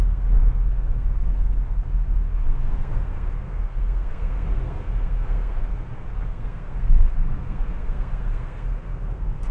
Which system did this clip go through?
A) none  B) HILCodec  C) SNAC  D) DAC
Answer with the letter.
C